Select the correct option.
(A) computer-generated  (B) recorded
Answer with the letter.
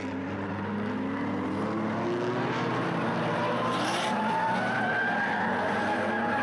B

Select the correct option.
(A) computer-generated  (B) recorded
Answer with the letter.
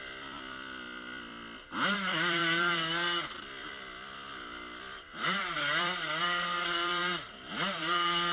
A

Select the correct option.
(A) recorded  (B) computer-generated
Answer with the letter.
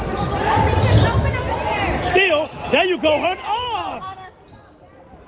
A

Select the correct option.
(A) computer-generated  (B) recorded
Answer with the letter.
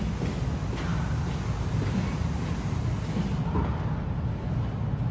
B